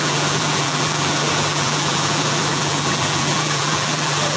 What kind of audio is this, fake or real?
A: fake